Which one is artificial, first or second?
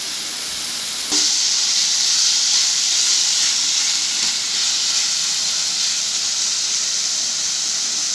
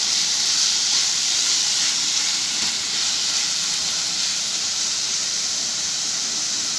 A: second